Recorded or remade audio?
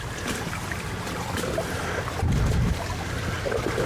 recorded